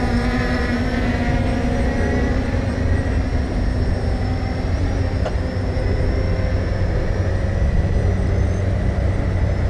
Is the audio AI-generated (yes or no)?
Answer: no